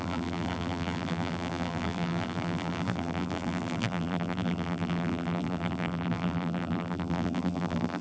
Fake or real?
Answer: fake